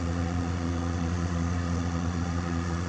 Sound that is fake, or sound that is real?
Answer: fake